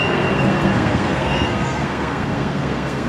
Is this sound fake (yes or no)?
yes